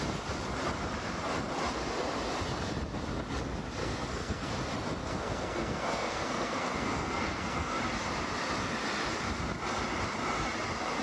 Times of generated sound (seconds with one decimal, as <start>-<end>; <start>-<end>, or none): 3.8-4.5; 5.0-7.8

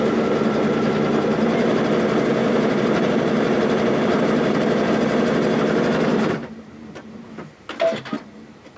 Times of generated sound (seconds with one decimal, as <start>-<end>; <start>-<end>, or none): 2.4-4.9; 6.1-7.3

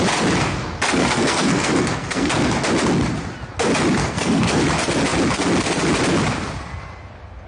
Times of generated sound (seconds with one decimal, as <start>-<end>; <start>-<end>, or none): 0.4-2.5; 4.0-4.6

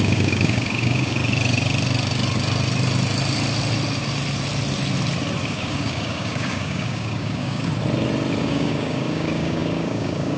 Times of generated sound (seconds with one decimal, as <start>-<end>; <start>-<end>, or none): 0.0-1.2; 5.5-7.7; 8.4-10.4